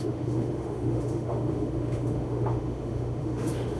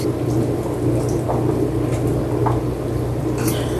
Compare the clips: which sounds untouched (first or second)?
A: second